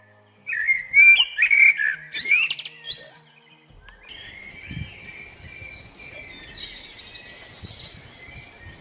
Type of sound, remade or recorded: recorded